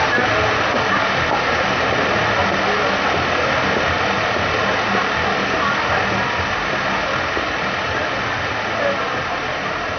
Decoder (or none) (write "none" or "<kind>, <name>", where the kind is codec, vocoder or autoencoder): none